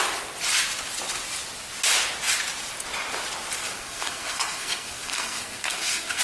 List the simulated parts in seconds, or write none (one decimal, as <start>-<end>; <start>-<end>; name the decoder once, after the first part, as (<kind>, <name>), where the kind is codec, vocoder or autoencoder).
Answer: 3.6-6.2 (codec, SNAC)